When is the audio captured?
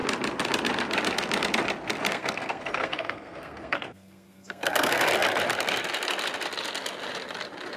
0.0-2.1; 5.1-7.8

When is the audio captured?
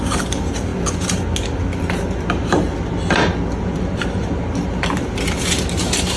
0.7-3.6